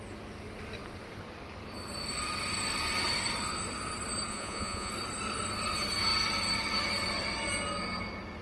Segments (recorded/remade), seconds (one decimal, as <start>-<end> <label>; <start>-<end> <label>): 0.0-4.3 recorded; 4.3-4.9 remade; 4.9-8.4 recorded